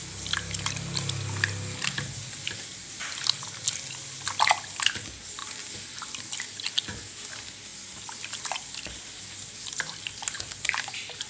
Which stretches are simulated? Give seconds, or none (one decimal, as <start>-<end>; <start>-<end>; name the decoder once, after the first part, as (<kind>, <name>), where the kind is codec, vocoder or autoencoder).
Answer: none